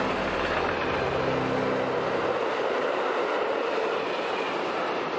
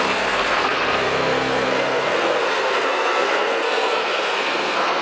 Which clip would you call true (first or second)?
first